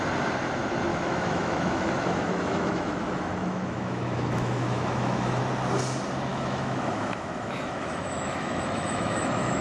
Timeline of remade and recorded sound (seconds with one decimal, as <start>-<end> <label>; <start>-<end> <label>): 0.0-0.9 recorded; 0.9-5.4 remade; 5.4-6.3 recorded; 6.3-9.6 remade